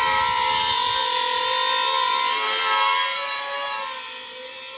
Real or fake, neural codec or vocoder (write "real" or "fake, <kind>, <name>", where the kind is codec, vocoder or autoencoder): real